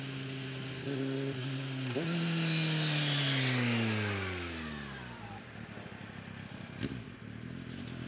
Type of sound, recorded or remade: recorded